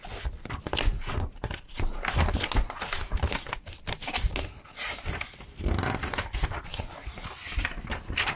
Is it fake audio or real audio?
real